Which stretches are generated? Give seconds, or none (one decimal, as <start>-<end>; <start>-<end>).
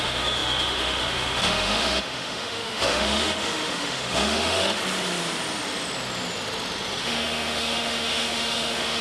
0.0-4.8; 7.0-9.0